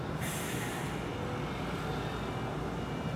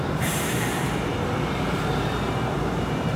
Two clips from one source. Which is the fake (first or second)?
second